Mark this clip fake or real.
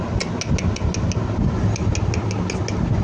real